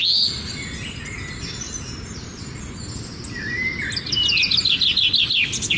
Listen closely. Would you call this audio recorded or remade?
recorded